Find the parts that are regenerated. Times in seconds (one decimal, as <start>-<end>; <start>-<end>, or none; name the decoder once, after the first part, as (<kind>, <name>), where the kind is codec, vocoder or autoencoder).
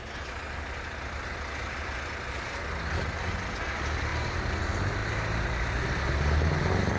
none